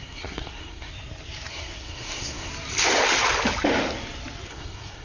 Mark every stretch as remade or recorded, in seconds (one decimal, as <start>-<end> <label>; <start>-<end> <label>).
0.0-0.9 remade; 0.9-1.5 recorded; 1.5-2.5 remade; 2.5-4.5 recorded; 4.5-5.0 remade